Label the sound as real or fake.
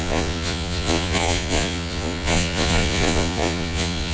fake